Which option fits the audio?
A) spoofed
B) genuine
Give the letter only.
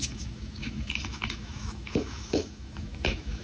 A